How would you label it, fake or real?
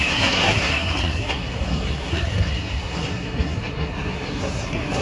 fake